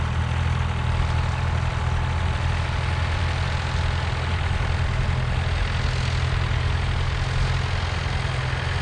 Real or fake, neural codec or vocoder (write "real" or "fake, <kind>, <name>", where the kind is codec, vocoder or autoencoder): real